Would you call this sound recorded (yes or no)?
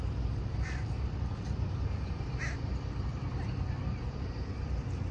no